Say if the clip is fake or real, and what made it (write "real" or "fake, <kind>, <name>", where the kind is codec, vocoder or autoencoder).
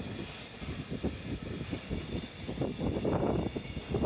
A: real